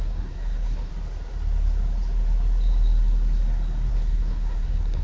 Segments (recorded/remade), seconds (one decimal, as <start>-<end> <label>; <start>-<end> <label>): 0.0-0.9 remade; 0.9-3.9 recorded; 3.9-5.0 remade